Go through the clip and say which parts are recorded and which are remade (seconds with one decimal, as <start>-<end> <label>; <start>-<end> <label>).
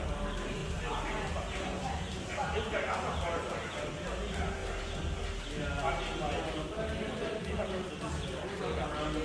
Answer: 0.0-9.2 recorded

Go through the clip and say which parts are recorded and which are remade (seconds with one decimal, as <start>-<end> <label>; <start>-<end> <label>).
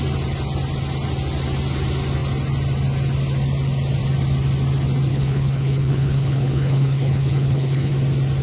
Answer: 0.0-5.1 recorded; 5.1-7.9 remade; 7.9-8.4 recorded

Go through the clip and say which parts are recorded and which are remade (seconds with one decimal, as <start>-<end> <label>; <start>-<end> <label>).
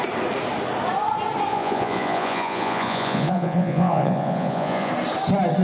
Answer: 0.0-1.5 recorded; 1.5-4.9 remade; 4.9-5.6 recorded